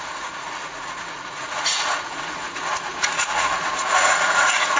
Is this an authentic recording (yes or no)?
no